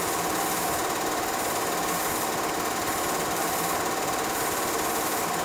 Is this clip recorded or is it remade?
recorded